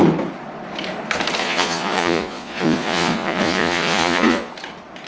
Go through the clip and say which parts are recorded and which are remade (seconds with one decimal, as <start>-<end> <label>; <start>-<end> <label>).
0.0-1.4 recorded; 1.4-4.5 remade; 4.5-5.1 recorded